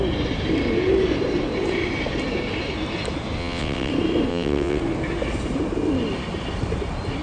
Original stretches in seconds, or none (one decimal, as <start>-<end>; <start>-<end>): 0.0-3.4; 3.9-4.3; 4.8-7.2